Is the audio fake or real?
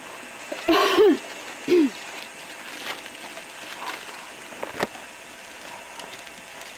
real